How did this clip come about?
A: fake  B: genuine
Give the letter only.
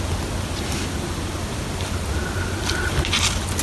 B